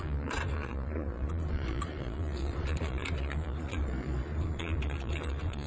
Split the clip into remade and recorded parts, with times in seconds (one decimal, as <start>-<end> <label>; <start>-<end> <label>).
0.0-5.7 remade